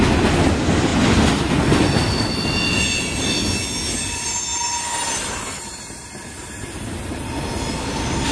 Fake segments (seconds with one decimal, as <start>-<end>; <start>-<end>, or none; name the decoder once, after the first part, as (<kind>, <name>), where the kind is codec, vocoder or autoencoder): none